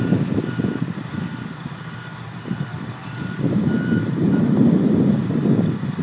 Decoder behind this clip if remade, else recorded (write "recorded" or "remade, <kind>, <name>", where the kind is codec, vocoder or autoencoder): remade, vocoder, BigVGAN v2